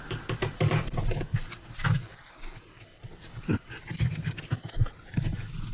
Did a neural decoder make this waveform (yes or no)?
yes